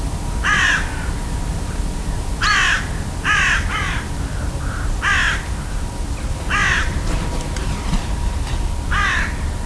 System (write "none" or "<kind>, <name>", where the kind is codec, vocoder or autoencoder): none